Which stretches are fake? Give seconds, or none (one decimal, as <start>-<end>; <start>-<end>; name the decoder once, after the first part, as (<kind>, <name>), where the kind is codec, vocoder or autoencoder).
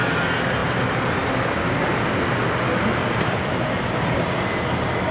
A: 3.0-3.7 (vocoder, BigVGAN v2)